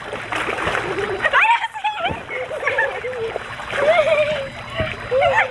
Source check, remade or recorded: recorded